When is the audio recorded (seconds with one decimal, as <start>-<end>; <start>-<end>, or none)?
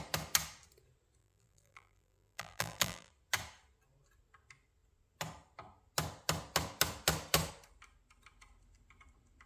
0.0-1.2; 3.1-9.5